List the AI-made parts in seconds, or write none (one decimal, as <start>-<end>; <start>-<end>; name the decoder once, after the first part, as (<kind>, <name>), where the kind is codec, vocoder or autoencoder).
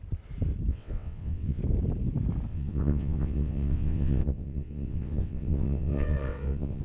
0.7-1.6 (vocoder, WaveNeXt); 2.5-6.8